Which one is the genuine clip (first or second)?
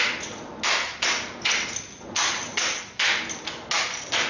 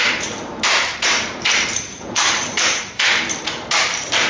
first